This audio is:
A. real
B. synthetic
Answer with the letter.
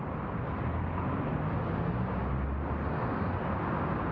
A